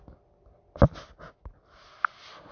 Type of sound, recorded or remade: recorded